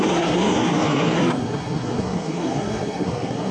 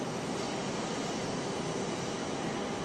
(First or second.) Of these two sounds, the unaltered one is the second